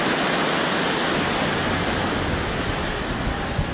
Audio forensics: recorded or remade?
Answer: recorded